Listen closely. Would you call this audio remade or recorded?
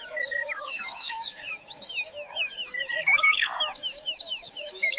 remade